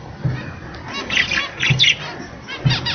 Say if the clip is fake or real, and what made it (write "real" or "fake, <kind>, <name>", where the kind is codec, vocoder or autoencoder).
real